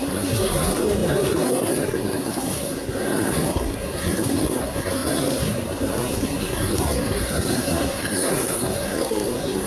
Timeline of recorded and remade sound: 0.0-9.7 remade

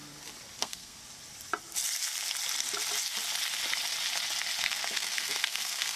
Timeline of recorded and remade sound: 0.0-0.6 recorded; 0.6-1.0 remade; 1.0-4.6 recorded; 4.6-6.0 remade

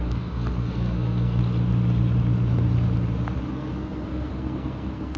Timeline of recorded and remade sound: 0.0-1.4 remade; 1.4-3.5 recorded; 3.5-5.2 remade

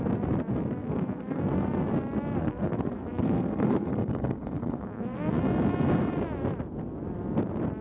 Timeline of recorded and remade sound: 0.0-0.8 recorded; 0.8-1.4 remade; 1.4-2.4 recorded; 2.4-5.4 remade; 5.4-7.8 recorded